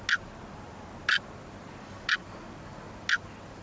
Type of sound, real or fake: real